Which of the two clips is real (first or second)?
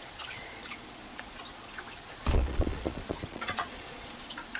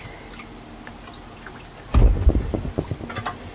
second